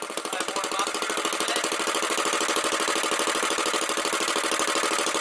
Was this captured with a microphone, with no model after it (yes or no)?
yes